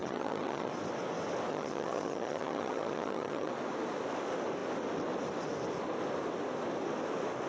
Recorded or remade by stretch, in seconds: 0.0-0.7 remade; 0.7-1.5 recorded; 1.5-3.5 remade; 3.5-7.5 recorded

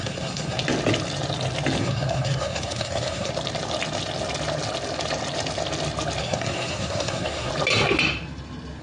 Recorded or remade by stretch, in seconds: 0.0-0.6 remade; 0.6-1.8 recorded; 1.8-3.3 remade; 3.3-6.2 recorded; 6.2-7.5 remade; 7.5-8.8 recorded

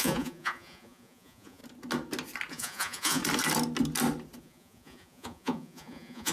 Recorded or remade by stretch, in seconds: 0.0-1.6 remade; 1.6-2.5 recorded; 2.5-3.2 remade; 3.2-4.4 recorded; 4.4-6.3 remade

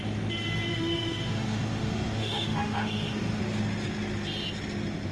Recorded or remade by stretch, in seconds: 0.0-0.7 recorded; 0.7-3.4 remade; 3.4-5.1 recorded

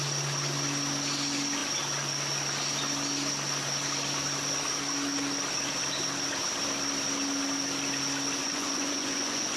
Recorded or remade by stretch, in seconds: 0.0-8.4 recorded; 8.4-9.6 remade

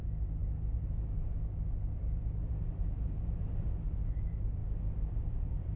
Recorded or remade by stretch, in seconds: 0.0-4.6 remade; 4.6-5.1 recorded; 5.1-5.8 remade

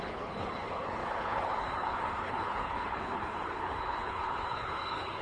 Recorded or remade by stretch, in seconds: 0.0-5.2 remade